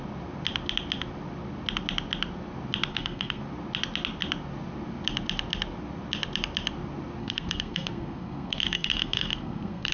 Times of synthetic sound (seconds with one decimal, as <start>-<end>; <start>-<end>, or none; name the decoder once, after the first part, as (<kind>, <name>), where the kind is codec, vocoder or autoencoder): 2.9-3.4 (codec, SNAC); 7.2-9.9